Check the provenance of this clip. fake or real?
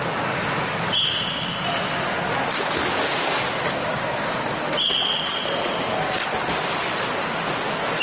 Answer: real